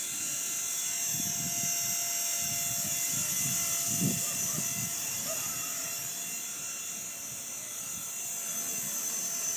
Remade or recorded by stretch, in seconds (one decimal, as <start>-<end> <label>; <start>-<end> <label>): 0.0-4.9 recorded; 4.9-5.5 remade; 5.5-9.6 recorded

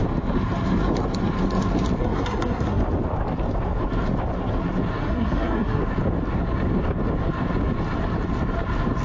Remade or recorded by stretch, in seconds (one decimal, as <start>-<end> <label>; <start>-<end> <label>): 0.0-2.0 recorded; 2.0-2.8 remade; 2.8-5.0 recorded; 5.0-5.8 remade; 5.8-9.0 recorded

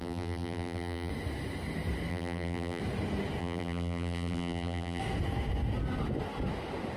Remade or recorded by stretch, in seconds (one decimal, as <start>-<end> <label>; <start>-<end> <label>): 0.0-1.1 remade; 1.1-2.1 recorded; 2.1-2.8 remade; 2.8-3.4 recorded; 3.4-5.0 remade; 5.0-7.0 recorded

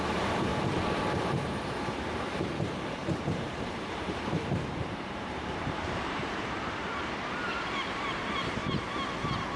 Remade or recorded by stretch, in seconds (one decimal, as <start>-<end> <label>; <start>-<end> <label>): 0.0-0.5 remade; 0.5-1.7 recorded; 1.7-8.6 remade; 8.6-9.6 recorded

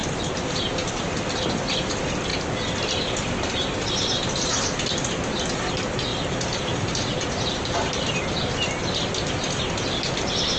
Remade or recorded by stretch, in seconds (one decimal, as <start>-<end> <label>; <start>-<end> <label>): 0.0-1.2 remade; 1.2-6.1 recorded; 6.1-8.5 remade; 8.5-10.6 recorded

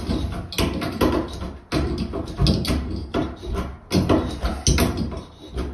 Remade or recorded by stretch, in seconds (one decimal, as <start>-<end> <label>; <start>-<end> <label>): 0.0-5.7 recorded